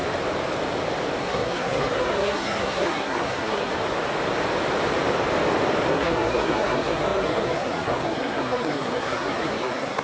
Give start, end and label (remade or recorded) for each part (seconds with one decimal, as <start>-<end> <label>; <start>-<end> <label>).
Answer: 0.0-1.2 recorded; 1.2-3.7 remade; 3.7-5.9 recorded; 5.9-10.0 remade